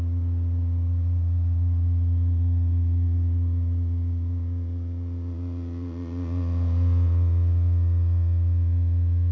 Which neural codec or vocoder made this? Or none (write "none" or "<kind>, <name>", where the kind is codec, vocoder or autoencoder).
vocoder, Vocos